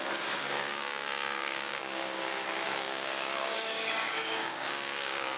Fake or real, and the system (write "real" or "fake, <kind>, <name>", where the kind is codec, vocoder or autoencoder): fake, codec, DAC